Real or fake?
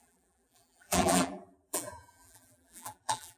fake